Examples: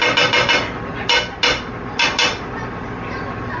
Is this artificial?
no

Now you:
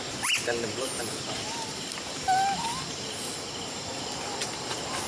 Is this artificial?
no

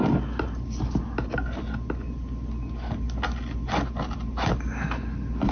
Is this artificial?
no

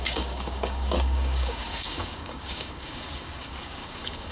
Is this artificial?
yes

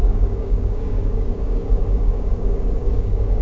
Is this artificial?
yes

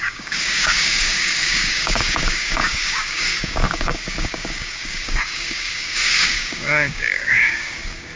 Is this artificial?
yes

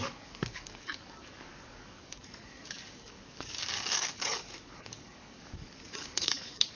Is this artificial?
yes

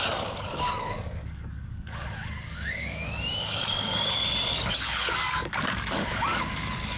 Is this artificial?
yes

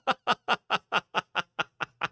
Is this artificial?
no